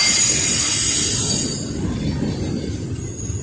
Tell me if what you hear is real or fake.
real